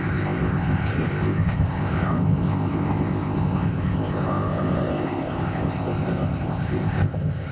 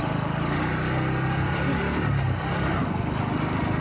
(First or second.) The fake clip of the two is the first